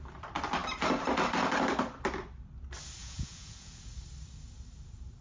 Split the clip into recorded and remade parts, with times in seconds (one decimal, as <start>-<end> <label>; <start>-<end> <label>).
0.0-3.0 recorded; 3.0-3.9 remade; 3.9-5.2 recorded